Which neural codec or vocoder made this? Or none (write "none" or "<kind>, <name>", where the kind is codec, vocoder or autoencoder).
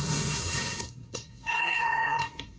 codec, SNAC